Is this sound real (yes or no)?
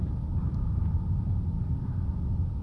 yes